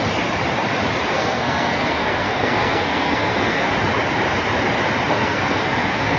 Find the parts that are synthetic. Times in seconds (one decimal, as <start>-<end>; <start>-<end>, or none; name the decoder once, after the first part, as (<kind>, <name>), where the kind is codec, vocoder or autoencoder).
1.1-3.7 (codec, SNAC); 5.1-6.2